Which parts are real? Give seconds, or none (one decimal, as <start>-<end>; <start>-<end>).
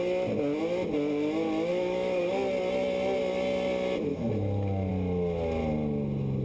0.0-1.7; 2.2-4.1; 4.9-6.4